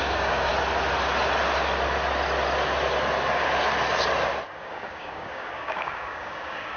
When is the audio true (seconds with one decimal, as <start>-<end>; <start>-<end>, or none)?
0.5-4.6